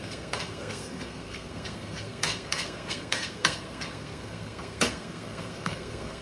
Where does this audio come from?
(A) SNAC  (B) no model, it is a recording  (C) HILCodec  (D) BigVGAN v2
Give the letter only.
A